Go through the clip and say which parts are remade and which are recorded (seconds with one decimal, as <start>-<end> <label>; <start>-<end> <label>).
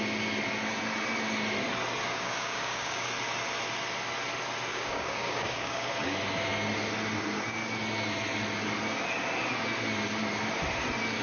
0.0-2.1 recorded; 2.1-3.1 remade; 3.1-4.7 recorded; 4.7-5.9 remade; 5.9-11.2 recorded